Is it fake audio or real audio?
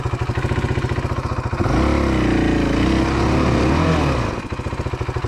real